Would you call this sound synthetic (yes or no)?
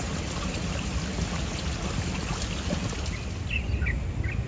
no